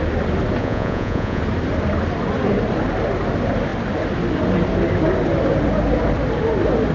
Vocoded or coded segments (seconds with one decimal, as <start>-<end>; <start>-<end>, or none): 0.6-1.4